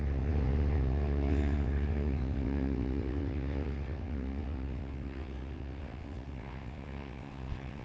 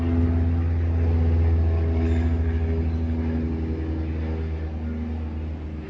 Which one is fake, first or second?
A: first